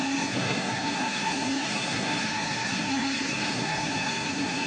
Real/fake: fake